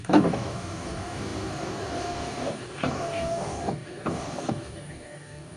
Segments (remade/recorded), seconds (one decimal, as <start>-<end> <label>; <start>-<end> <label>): 0.0-5.6 remade